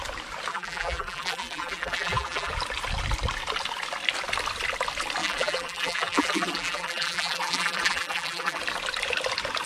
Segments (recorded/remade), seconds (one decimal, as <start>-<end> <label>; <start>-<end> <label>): 0.0-0.5 recorded; 0.5-2.5 remade; 2.5-5.2 recorded; 5.2-8.6 remade; 8.6-9.7 recorded